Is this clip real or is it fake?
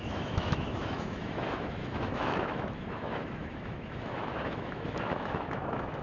fake